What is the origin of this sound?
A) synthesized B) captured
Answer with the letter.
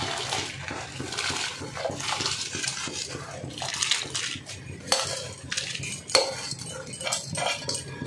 B